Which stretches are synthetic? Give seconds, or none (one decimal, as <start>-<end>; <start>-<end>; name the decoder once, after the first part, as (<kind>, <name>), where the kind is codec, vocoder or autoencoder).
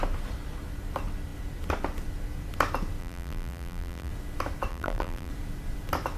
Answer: 3.0-4.1 (vocoder, BigVGAN v2); 4.7-5.3